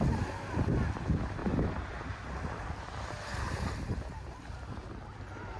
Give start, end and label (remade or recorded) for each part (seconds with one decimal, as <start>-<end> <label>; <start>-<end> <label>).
0.0-1.4 recorded; 1.4-4.8 remade; 4.8-5.6 recorded